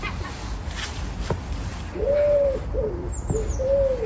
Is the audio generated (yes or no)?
no